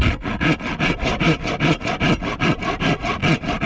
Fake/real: real